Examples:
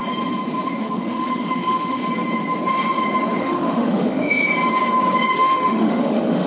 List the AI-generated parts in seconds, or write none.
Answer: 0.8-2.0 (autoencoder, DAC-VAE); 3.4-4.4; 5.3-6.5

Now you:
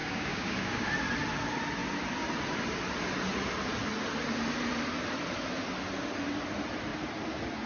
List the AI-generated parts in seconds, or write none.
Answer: 0.0-0.9 (codec, DAC)

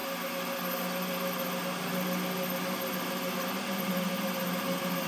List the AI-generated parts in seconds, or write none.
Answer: none

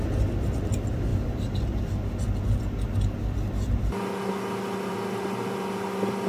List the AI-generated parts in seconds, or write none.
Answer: none

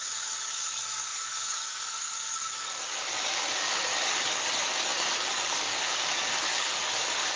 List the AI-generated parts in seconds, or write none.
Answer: 0.0-7.4 (codec, DAC)

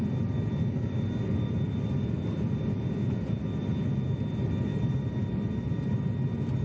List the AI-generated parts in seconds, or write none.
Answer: none

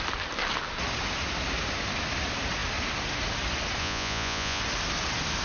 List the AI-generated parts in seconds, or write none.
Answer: 3.8-4.6 (vocoder, Vocos)